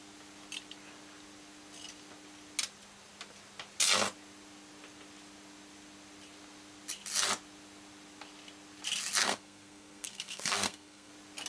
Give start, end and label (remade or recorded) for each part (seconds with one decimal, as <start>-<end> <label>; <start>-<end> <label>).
0.0-9.2 recorded; 9.2-11.1 remade; 11.1-11.5 recorded